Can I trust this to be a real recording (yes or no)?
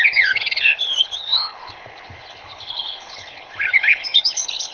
no